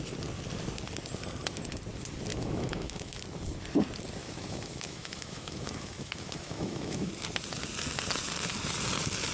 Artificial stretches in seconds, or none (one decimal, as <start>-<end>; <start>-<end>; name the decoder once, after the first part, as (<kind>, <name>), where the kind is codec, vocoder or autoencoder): 2.3-3.2 (autoencoder, DAC-VAE); 4.2-7.1